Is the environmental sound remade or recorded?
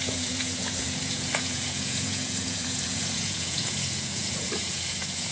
remade